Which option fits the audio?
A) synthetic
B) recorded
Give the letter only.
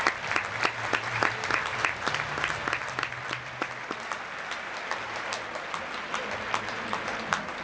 B